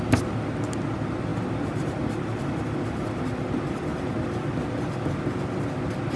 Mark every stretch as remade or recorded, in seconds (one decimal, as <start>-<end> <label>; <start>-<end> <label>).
0.0-6.2 recorded